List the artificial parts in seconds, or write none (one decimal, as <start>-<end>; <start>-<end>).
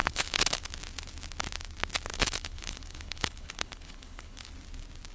0.0-0.7; 2.1-4.5